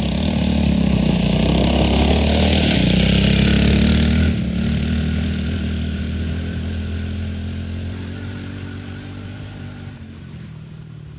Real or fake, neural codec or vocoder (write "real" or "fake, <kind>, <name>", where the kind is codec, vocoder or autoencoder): real